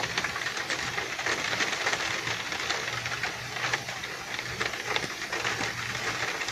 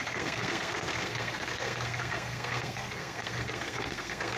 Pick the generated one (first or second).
second